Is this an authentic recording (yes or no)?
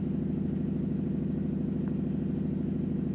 yes